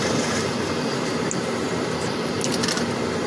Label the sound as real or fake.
real